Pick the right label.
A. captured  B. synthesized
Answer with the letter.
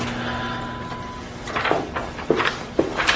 A